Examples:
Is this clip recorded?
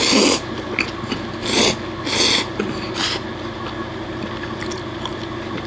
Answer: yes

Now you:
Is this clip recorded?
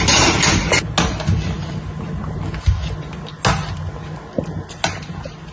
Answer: yes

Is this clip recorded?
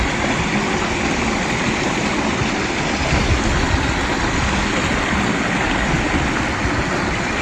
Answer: yes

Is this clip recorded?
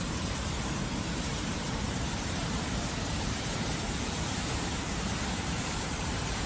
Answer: no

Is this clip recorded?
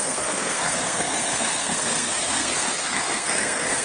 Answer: no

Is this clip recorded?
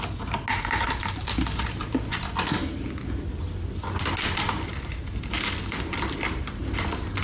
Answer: yes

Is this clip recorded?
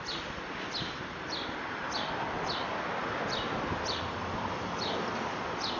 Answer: yes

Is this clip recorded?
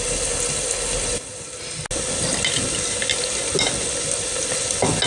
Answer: yes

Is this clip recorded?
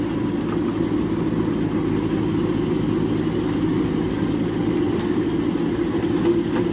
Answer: yes